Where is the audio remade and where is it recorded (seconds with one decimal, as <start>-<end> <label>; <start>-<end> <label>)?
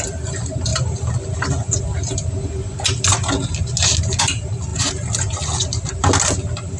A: 0.0-6.8 recorded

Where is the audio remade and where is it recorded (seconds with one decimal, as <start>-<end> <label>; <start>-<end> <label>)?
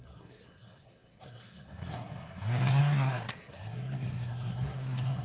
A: 0.0-5.2 remade